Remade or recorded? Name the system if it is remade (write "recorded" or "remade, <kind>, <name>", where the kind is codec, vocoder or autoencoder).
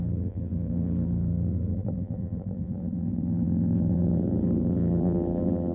remade, vocoder, BigVGAN v2